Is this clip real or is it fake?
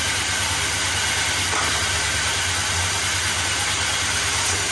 real